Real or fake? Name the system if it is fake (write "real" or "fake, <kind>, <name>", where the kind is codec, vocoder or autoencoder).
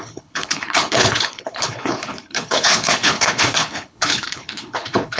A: fake, codec, HILCodec